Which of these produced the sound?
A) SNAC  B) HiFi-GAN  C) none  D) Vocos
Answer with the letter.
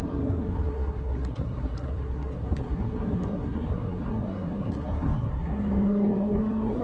A